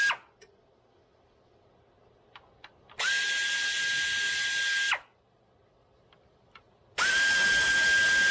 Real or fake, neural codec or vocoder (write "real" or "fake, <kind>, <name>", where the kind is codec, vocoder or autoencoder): real